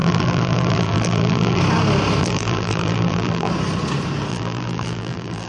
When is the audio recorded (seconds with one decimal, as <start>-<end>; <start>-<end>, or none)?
1.6-2.2; 3.5-4.3